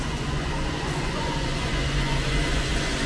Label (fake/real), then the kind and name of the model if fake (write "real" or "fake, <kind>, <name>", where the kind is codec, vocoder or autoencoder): fake, vocoder, Vocos